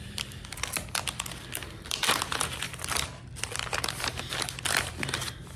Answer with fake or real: fake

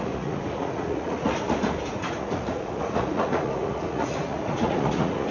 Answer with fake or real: fake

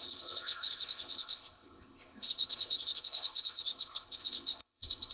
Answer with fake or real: fake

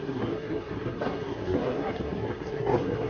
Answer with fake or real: fake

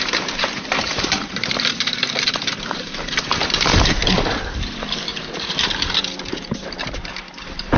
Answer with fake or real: fake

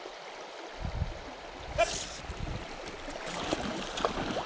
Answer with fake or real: real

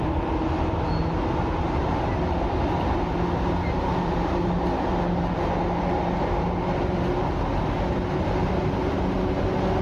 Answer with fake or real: real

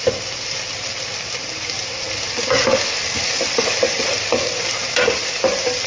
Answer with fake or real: real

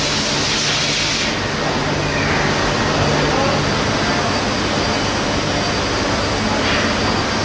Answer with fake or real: real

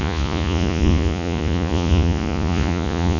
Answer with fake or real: fake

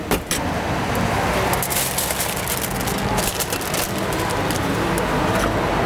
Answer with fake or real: real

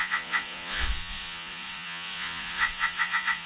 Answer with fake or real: fake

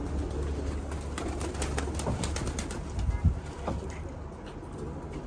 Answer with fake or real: real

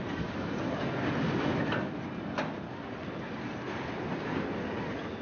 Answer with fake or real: real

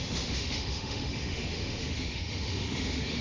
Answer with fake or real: fake